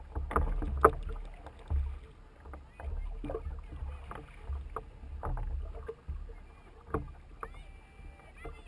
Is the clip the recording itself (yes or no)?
yes